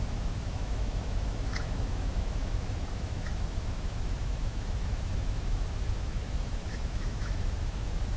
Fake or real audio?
fake